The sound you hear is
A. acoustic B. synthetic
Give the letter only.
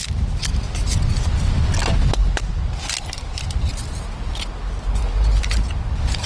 A